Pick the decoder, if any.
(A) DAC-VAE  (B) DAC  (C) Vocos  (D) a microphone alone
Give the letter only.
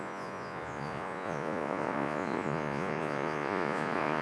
C